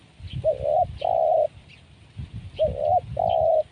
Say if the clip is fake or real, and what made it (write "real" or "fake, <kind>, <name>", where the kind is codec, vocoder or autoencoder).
real